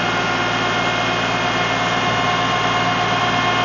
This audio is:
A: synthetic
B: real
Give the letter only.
B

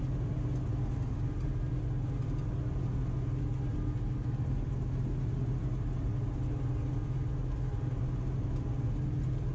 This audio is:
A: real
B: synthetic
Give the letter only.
A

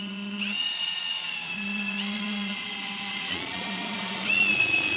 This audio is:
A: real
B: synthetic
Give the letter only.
B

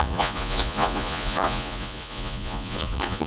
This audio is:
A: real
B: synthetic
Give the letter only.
B